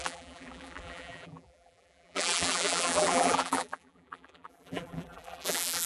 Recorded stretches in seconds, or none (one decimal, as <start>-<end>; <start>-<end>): none